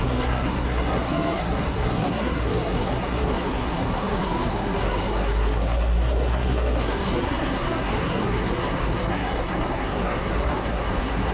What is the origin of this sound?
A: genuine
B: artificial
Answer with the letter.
B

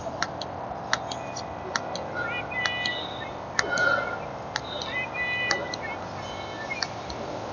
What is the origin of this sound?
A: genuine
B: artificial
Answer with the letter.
A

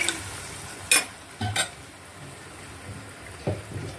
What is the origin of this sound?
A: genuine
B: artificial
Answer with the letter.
A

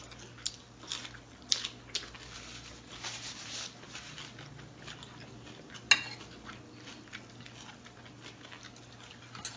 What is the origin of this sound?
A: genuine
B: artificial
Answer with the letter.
A